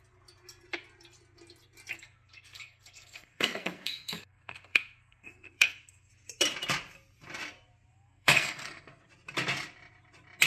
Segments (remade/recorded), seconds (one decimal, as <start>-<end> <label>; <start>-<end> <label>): 0.0-1.9 recorded; 1.9-6.1 remade; 6.1-7.9 recorded; 7.9-9.0 remade; 9.0-10.5 recorded